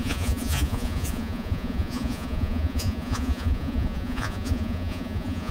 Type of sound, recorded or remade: remade